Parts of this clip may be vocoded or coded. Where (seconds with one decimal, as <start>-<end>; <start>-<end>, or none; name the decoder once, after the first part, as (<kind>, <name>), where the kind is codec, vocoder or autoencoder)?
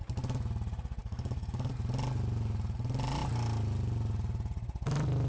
1.0-1.7 (codec, DAC)